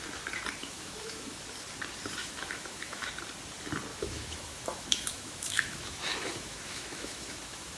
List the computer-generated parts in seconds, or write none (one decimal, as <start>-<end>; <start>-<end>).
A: 0.6-1.4; 2.2-3.1; 3.9-7.8